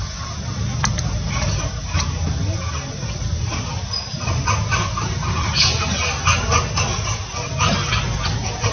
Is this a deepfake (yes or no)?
no